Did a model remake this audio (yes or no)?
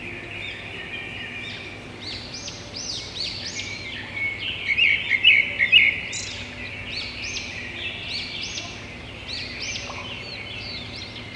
no